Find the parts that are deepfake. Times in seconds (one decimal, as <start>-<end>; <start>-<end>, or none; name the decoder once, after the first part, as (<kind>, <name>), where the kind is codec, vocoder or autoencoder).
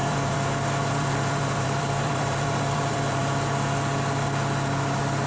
0.0-3.2 (vocoder, BigVGAN v2)